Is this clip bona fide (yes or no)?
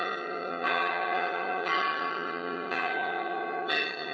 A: no